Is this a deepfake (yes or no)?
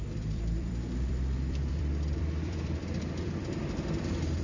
yes